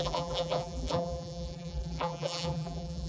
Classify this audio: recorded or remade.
remade